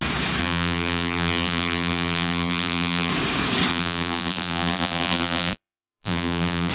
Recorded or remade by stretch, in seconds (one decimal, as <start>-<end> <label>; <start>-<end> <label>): 0.0-0.4 recorded; 0.4-3.1 remade; 3.1-3.7 recorded; 3.7-6.7 remade